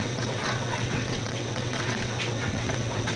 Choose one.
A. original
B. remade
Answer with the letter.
B